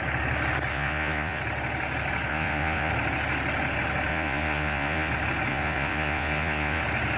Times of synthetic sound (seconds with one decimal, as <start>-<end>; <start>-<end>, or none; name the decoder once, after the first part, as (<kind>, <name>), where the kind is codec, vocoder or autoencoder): 0.7-1.4 (vocoder, Vocos); 2.3-2.9; 4.1-5.1; 5.5-6.8

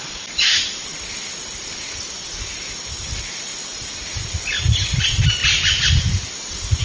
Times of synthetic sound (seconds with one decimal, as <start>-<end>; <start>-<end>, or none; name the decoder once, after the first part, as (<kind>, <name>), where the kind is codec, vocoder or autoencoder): none